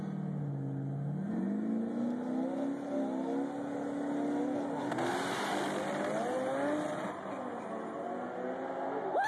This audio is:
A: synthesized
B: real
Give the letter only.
B